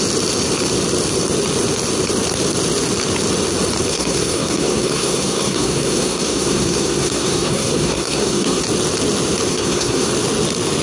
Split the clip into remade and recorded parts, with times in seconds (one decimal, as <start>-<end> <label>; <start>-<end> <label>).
0.0-3.9 recorded; 3.9-8.6 remade; 8.6-9.5 recorded; 9.5-10.1 remade; 10.1-10.8 recorded